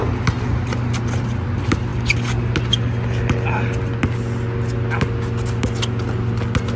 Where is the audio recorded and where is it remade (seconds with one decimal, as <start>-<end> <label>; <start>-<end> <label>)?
0.0-6.8 recorded